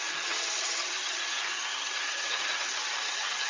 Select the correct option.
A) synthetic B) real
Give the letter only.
A